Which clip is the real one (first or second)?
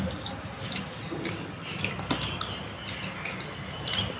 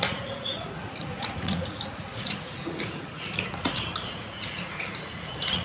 first